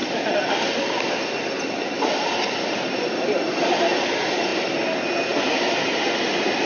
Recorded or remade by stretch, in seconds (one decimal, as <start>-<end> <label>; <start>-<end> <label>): 0.0-6.7 recorded